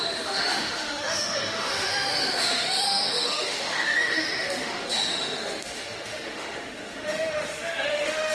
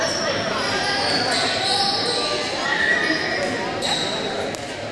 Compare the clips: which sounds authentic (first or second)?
second